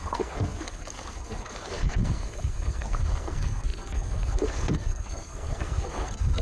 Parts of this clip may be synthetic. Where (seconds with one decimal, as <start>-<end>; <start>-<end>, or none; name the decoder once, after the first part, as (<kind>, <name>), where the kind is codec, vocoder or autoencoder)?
0.0-6.4 (codec, SNAC)